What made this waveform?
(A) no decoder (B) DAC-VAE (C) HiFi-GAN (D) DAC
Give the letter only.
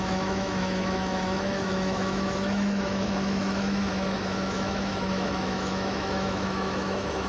B